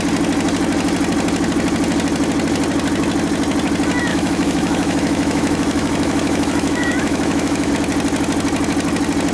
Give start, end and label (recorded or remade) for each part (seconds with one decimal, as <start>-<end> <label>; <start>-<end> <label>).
0.0-4.1 recorded; 4.1-7.7 remade; 7.7-9.3 recorded